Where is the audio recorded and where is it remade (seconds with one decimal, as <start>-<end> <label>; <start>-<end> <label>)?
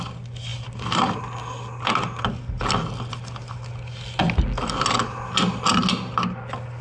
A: 0.0-6.8 recorded